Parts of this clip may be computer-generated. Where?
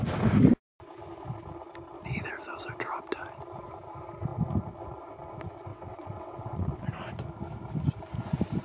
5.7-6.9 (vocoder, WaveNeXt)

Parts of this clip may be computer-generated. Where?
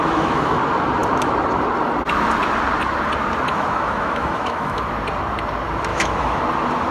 0.0-0.6 (autoencoder, DAC-VAE); 3.5-4.8; 5.9-6.4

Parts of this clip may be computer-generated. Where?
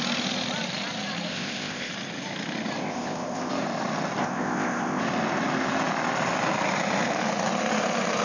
1.3-1.9 (codec, ZipCodec); 2.8-3.5; 4.2-5.0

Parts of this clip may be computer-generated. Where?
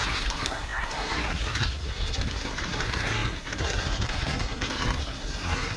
0.0-5.8 (codec, SNAC)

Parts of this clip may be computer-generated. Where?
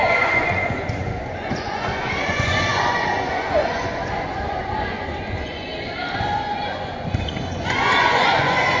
0.0-5.7 (vocoder, Vocos); 6.2-8.8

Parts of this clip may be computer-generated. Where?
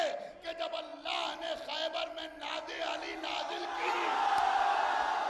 none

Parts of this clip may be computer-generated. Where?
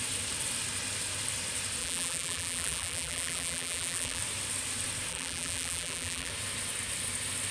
1.8-4.2 (vocoder, BigVGAN v2); 5.1-6.3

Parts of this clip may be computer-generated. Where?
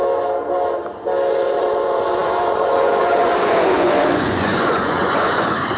1.3-5.8 (vocoder, Vocos)